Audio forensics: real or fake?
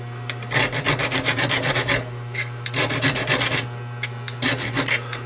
real